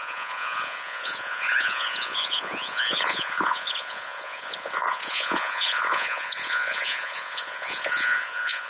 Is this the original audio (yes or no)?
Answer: no